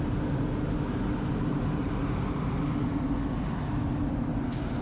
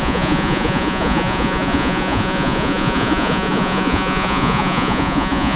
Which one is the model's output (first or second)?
second